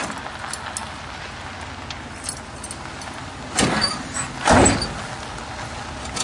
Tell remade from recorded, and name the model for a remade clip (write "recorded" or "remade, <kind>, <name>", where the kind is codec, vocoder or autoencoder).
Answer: recorded